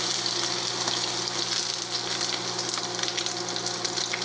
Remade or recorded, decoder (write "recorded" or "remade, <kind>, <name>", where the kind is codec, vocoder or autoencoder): recorded